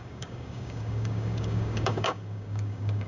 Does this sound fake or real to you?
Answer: fake